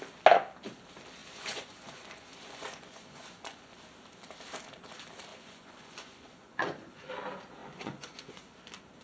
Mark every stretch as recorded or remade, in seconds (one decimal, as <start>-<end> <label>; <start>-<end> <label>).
0.0-1.2 recorded; 1.2-3.8 remade; 3.8-5.3 recorded; 5.3-7.1 remade; 7.1-7.6 recorded; 7.6-8.4 remade; 8.4-9.0 recorded